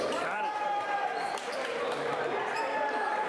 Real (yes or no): no